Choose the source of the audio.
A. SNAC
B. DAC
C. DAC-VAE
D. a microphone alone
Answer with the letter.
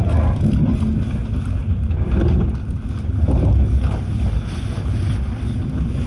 D